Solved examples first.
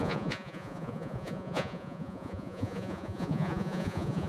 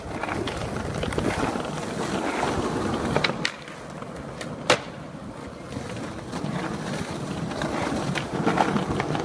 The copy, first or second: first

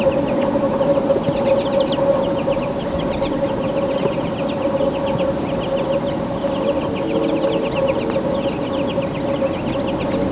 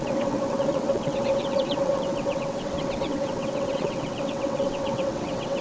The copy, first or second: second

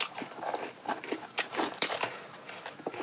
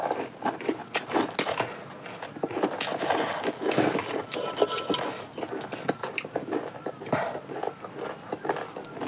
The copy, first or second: first